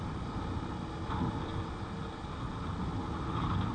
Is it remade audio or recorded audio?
recorded